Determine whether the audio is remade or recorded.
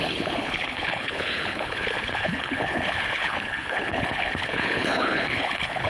remade